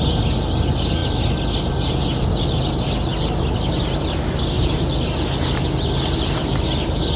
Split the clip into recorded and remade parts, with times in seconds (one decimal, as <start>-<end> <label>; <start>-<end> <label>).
0.0-7.2 recorded